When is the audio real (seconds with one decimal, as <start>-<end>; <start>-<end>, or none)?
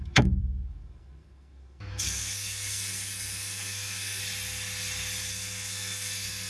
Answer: 4.2-5.3